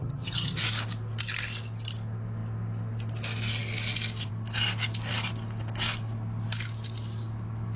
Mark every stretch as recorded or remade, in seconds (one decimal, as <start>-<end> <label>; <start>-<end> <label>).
0.0-0.6 remade; 0.6-7.8 recorded